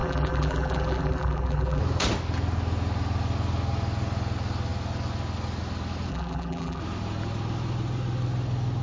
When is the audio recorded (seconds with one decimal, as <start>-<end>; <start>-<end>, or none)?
1.8-6.1; 6.8-8.8